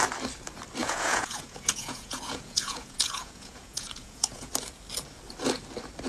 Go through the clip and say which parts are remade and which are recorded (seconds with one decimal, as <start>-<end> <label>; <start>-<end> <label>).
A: 0.0-0.8 recorded; 0.8-4.5 remade; 4.5-6.1 recorded